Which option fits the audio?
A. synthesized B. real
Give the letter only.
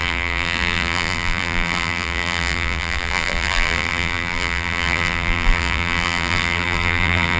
A